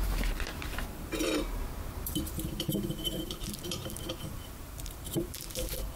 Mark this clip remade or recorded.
remade